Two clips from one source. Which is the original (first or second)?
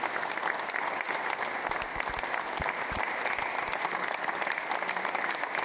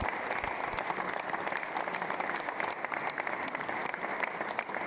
first